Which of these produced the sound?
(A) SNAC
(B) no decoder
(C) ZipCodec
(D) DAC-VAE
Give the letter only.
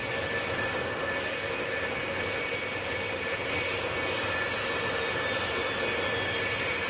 B